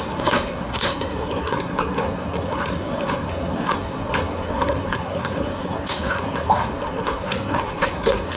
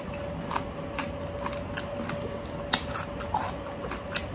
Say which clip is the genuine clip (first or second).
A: second